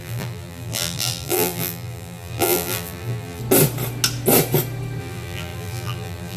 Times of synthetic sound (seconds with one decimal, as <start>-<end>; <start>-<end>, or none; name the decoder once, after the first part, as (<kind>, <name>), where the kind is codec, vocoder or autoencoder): 0.0-3.4 (vocoder, BigVGAN v2); 5.0-6.4